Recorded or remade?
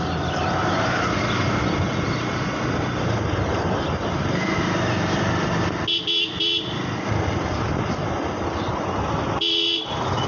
recorded